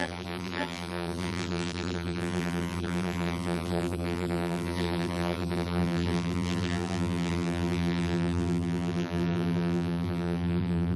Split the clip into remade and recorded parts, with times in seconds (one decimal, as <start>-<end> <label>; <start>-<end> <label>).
0.0-11.0 remade

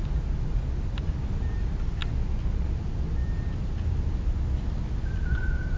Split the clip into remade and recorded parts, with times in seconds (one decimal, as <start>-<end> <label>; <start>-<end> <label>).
0.0-5.8 recorded

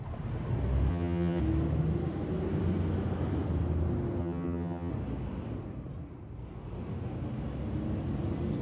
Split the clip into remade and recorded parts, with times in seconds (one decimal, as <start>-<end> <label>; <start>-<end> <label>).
0.0-0.9 recorded; 0.9-1.4 remade; 1.4-4.2 recorded; 4.2-4.9 remade; 4.9-8.6 recorded